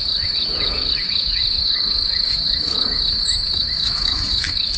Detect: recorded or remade remade